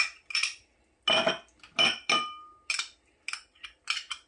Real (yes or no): yes